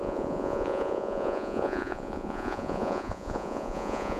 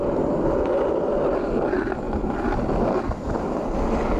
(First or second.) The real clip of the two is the second